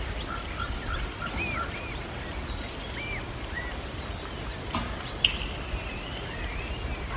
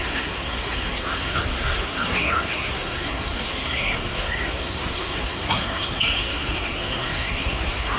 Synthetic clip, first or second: second